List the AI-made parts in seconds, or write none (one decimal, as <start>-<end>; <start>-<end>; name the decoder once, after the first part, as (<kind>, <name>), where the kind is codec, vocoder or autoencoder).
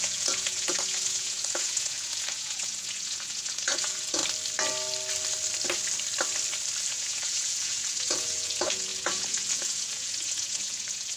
0.0-4.2 (vocoder, Vocos); 6.9-11.2